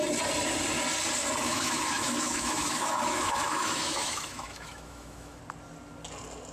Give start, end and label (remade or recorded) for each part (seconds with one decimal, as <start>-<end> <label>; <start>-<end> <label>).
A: 0.0-1.5 recorded; 1.5-5.4 remade; 5.4-6.5 recorded